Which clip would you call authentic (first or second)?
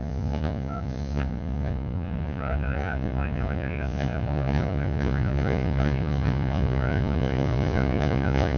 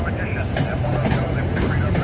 second